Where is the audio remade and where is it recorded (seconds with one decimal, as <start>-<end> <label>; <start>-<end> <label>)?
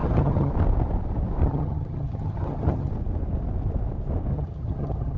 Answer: 0.0-0.5 remade; 0.5-1.4 recorded; 1.4-2.9 remade; 2.9-4.3 recorded; 4.3-5.2 remade